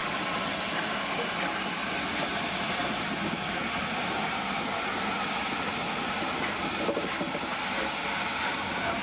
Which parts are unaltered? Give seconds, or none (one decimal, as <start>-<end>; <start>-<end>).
0.0-9.0